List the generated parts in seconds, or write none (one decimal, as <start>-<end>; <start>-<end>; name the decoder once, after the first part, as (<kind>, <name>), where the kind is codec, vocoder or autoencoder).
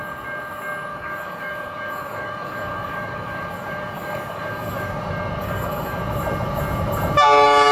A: 0.9-5.0 (codec, DAC); 5.4-6.0